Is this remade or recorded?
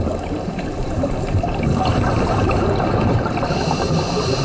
remade